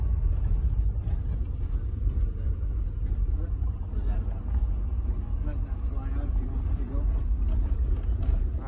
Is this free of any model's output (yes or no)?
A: yes